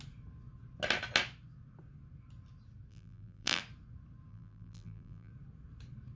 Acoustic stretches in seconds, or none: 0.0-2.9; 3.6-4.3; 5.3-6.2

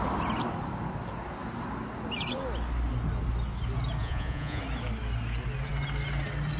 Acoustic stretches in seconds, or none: 0.0-4.0; 4.6-6.6

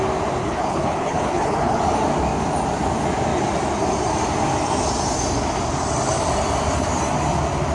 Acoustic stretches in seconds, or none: 0.0-0.4; 1.8-7.7

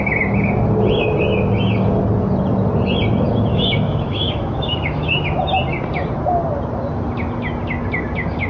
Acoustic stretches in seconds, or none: 0.0-3.5; 5.4-8.5

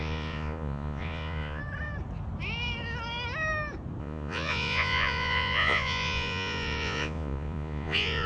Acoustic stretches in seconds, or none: 1.6-4.0

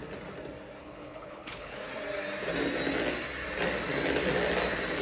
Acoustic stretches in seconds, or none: 0.0-0.8; 1.8-5.0